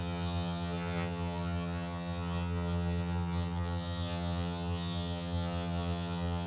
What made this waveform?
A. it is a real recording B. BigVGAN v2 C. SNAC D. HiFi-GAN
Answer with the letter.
D